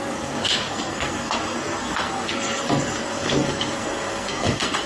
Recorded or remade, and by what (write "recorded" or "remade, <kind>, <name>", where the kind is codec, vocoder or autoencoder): remade, codec, SNAC